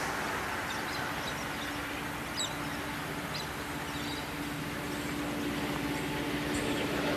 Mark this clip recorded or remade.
recorded